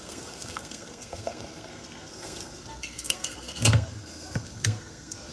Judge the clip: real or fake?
fake